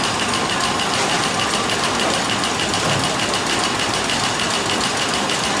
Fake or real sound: real